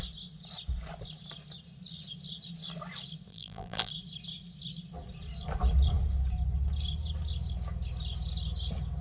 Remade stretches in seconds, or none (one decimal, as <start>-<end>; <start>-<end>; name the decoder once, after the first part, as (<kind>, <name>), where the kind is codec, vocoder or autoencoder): 3.3-3.9 (vocoder, BigVGAN v2)